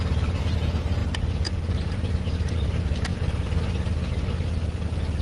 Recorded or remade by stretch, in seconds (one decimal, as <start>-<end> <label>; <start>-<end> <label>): 0.0-5.2 recorded